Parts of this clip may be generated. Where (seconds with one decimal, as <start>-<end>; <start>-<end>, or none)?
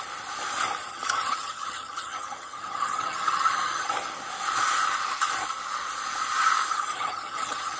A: 0.9-3.9; 6.7-7.8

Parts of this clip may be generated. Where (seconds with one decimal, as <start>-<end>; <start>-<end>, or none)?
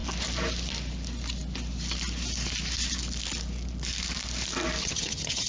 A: 4.8-5.5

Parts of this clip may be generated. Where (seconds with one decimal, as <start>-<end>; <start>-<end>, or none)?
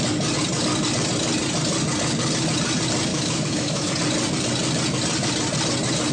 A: 3.1-3.9